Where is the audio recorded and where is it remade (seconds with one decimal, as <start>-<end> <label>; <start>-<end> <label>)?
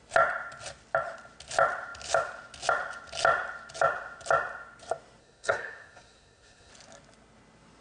0.0-5.2 recorded; 5.2-6.7 remade; 6.7-7.8 recorded